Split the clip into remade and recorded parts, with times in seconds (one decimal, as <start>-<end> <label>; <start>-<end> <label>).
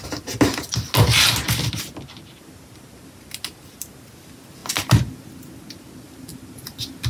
0.0-7.1 recorded